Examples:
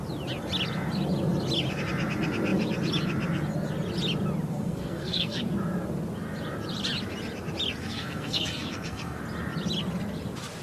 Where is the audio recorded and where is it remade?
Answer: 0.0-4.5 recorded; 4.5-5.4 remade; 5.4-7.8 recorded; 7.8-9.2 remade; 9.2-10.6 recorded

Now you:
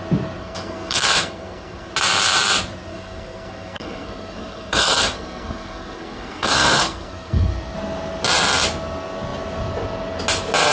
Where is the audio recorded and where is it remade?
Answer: 0.0-0.4 recorded; 0.4-1.9 remade; 1.9-2.9 recorded; 2.9-7.5 remade; 7.5-10.7 recorded

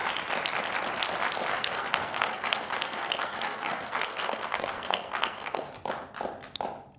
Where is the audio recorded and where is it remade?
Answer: 0.0-1.5 recorded; 1.5-5.7 remade; 5.7-7.0 recorded

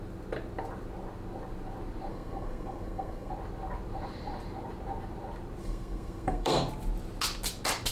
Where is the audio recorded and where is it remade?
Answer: 0.0-2.1 recorded; 2.1-3.3 remade; 3.3-5.6 recorded; 5.6-6.7 remade; 6.7-7.9 recorded

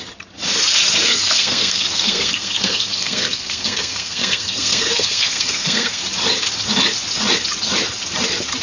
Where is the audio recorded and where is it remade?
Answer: 0.0-1.0 recorded; 1.0-6.0 remade; 6.0-8.6 recorded